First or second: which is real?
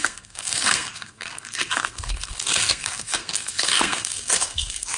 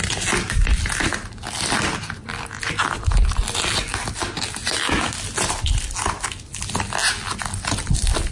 second